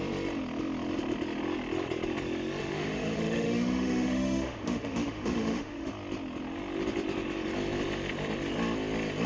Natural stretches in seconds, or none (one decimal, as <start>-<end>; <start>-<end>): 0.0-2.6; 5.9-9.3

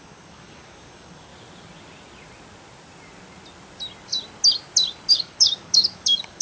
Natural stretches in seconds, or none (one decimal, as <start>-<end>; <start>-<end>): 1.3-5.1

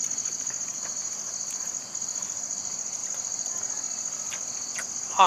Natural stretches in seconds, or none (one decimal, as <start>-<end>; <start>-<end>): 0.0-3.0; 3.5-5.3

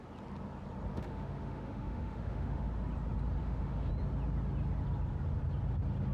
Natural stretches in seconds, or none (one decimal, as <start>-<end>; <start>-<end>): 0.0-0.9; 2.7-3.4; 3.9-6.1

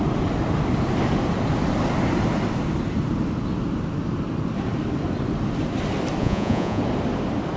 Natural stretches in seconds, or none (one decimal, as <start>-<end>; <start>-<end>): 0.0-6.2; 6.8-7.6

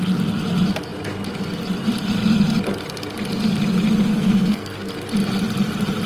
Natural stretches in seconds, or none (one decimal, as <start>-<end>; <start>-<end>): 0.0-4.1; 4.9-6.1

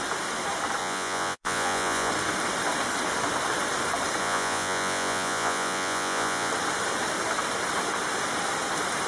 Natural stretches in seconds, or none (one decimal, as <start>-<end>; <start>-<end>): 0.0-0.8; 2.1-4.2; 6.5-9.1

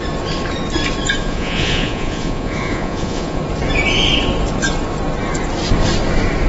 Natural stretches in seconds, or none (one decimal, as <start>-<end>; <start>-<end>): 0.0-1.2; 3.4-6.5